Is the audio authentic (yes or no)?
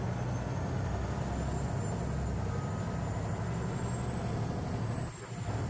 yes